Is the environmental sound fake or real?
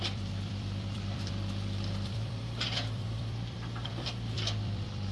fake